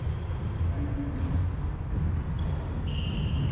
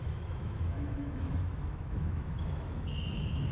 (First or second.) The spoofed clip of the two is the second